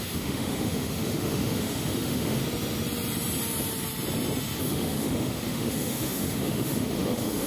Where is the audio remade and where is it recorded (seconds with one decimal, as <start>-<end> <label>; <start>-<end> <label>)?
0.0-2.4 remade; 2.4-4.6 recorded; 4.6-7.5 remade